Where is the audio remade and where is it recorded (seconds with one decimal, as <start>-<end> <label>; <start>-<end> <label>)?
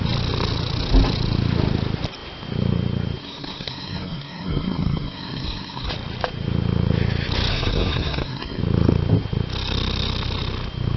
0.0-3.2 recorded; 3.2-5.9 remade; 5.9-7.5 recorded; 7.5-8.6 remade; 8.6-11.0 recorded